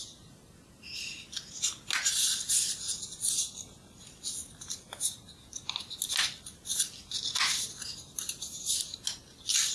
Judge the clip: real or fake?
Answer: real